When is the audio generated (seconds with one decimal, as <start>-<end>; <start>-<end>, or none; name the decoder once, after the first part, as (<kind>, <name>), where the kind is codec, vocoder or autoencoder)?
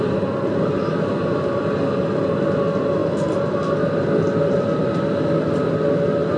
none